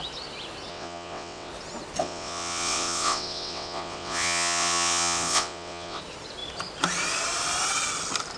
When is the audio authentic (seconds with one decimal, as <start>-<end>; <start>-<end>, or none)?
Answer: 0.0-0.7; 1.5-2.0; 6.0-8.4

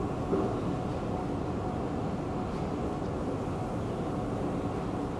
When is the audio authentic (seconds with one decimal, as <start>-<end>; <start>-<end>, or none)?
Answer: 0.0-5.2

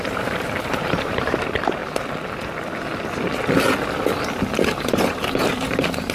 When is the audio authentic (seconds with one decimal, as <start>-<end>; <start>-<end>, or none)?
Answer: 1.8-4.8

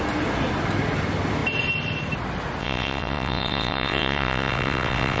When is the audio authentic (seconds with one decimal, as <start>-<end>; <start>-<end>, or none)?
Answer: 0.0-2.6

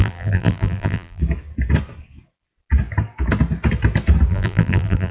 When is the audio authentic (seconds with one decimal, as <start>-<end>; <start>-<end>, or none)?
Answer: 1.2-4.3

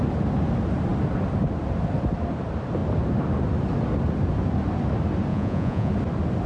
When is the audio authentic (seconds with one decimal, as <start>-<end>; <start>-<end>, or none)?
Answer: 0.0-5.3; 5.9-6.5

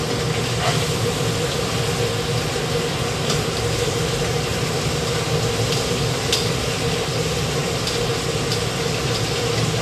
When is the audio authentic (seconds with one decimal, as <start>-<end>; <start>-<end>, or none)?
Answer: 0.0-9.8